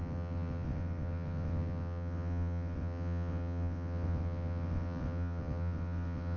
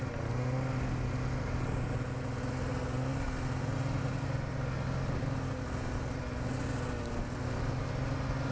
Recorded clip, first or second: second